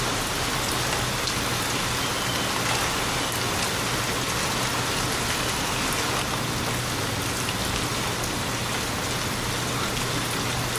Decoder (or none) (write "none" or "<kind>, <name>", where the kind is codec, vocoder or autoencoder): none